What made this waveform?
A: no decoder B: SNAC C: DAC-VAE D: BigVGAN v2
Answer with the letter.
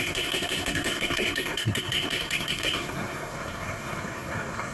B